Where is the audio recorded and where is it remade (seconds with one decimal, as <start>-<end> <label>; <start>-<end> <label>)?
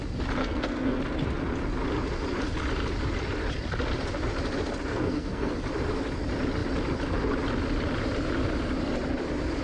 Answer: 0.0-0.4 recorded; 0.4-1.0 remade; 1.0-4.9 recorded; 4.9-5.5 remade; 5.5-9.6 recorded